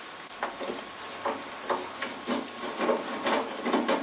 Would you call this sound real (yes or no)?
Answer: yes